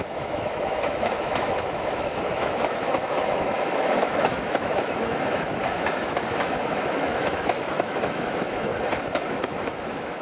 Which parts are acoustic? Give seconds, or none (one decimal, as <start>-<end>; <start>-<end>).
8.7-9.3

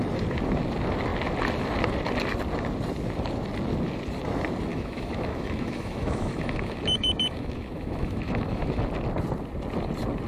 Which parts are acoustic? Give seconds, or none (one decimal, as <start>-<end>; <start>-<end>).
0.0-4.7; 8.8-10.3

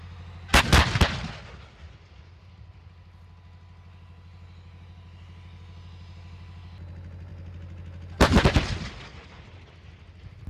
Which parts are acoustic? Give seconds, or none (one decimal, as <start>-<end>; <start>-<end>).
0.0-10.5

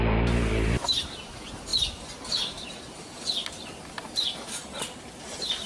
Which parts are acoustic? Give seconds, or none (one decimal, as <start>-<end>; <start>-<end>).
0.0-5.7

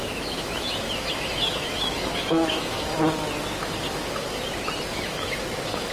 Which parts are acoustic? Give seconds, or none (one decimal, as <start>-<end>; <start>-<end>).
3.0-3.6; 4.4-4.9